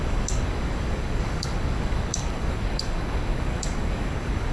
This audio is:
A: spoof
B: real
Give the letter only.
A